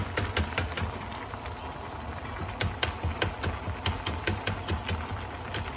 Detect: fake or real real